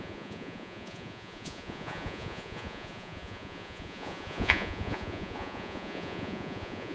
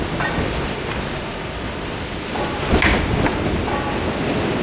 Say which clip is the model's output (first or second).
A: first